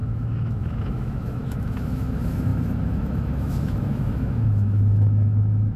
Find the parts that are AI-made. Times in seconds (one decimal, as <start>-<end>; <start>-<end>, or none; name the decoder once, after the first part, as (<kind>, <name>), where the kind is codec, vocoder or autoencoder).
0.0-5.8 (autoencoder, DAC-VAE)